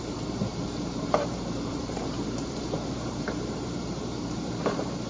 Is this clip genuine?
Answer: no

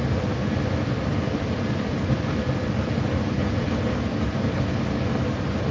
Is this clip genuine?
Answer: yes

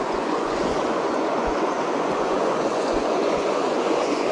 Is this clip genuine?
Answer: no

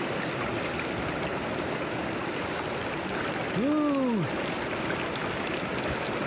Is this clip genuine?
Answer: yes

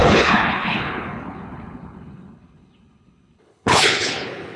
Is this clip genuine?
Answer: no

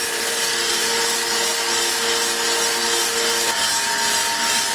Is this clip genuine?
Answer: yes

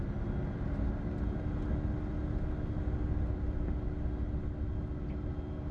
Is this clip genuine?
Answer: yes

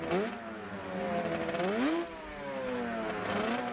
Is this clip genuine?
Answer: yes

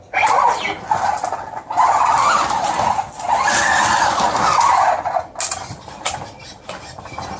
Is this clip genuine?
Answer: yes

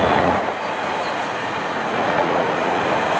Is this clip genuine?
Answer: no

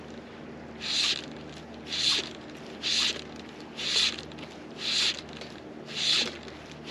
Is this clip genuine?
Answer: yes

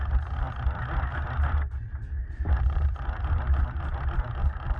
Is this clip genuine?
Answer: yes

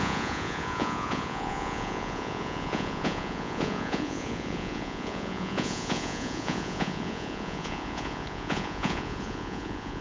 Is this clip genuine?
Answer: no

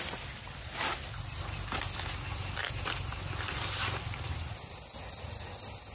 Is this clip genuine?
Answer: yes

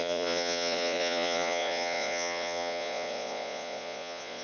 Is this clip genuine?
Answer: no